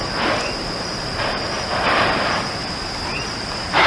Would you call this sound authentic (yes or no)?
yes